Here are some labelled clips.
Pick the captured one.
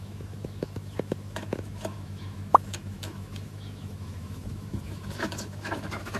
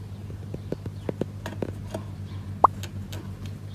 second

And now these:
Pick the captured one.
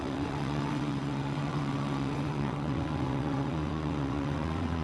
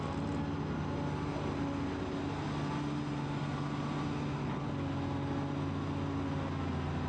second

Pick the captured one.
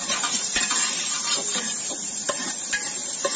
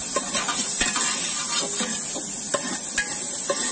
second